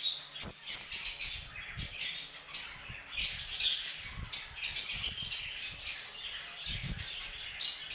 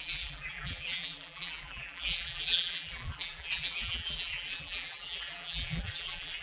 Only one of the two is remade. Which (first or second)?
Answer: second